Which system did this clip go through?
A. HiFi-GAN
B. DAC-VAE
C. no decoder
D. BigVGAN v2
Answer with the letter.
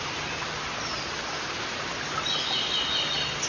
C